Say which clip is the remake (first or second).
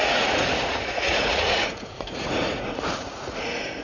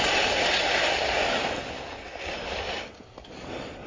first